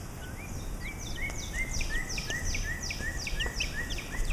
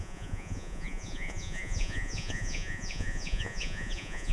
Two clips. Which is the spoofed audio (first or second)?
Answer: second